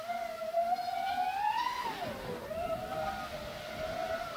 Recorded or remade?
recorded